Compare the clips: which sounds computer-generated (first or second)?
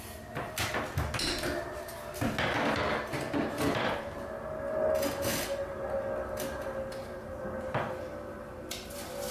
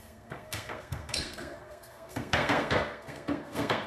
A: second